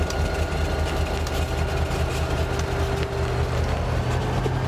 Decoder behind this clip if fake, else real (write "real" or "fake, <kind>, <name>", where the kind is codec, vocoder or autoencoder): real